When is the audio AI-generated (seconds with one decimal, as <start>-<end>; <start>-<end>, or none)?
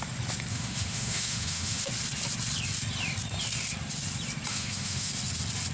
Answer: 0.5-1.9; 4.5-5.1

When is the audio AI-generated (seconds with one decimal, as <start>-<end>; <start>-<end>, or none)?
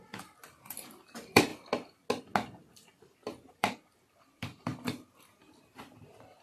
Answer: 0.0-1.5; 3.5-4.7; 5.4-6.4